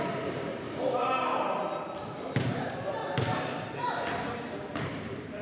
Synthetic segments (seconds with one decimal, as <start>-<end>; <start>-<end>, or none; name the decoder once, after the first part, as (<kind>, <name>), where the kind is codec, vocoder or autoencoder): 0.0-1.3 (vocoder, BigVGAN v2); 2.2-3.0; 4.3-5.4